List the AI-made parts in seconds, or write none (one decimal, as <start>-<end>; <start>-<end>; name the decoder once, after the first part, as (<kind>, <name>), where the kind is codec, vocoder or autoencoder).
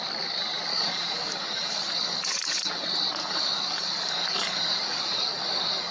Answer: 0.7-2.7 (codec, DAC); 3.2-5.9